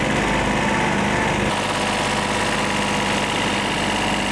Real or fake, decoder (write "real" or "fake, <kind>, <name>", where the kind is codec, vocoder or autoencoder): real